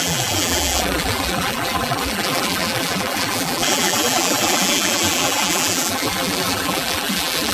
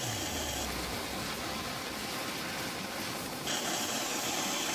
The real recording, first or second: second